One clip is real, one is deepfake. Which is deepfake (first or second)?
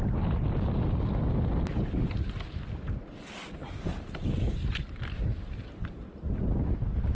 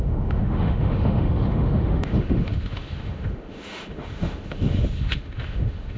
second